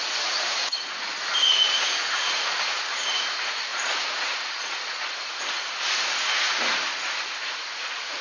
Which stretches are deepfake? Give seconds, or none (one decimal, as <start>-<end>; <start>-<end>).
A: 0.0-0.6; 1.9-8.2